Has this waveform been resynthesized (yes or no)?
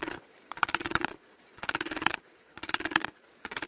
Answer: yes